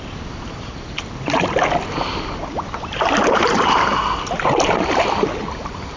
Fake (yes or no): no